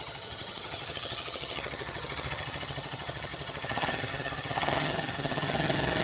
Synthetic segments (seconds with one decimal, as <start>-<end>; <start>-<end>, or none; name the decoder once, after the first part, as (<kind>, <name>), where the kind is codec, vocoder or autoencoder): 0.0-6.0 (vocoder, HiFi-GAN)